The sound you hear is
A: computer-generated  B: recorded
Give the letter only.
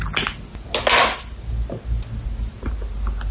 B